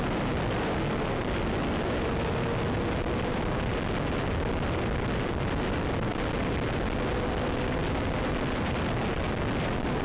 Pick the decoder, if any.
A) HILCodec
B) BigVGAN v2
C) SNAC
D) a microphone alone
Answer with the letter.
D